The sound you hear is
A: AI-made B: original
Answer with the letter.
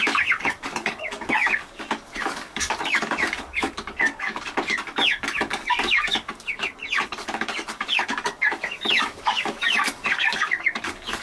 A